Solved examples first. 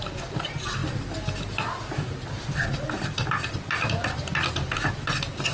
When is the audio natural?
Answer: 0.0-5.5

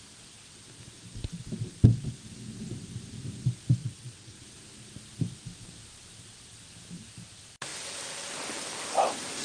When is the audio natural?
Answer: 0.0-3.8; 4.4-9.4

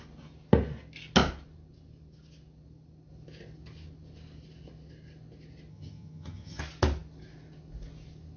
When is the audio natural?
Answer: 0.0-5.7; 6.6-8.4

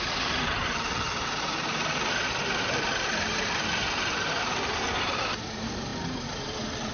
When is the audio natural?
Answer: 0.0-6.9

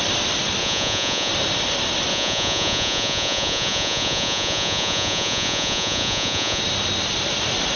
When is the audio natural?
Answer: 0.0-0.6; 1.3-2.1; 6.6-7.8

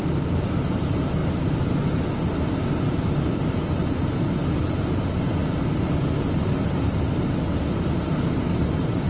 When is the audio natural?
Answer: 0.0-9.1

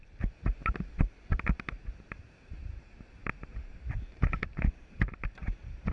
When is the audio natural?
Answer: 0.6-1.3

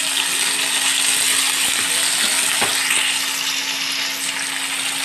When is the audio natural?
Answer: 0.0-5.0